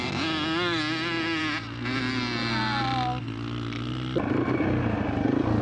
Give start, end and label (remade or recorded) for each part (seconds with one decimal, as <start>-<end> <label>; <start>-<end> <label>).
0.0-5.6 recorded